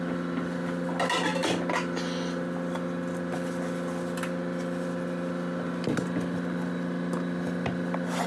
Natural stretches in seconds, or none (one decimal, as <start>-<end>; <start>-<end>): 0.0-8.3

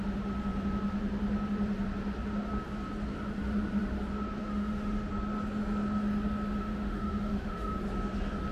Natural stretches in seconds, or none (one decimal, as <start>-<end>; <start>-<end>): 0.0-4.4; 5.1-6.6; 7.7-8.5

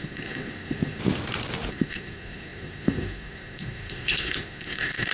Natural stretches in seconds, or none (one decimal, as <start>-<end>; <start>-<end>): 1.0-1.7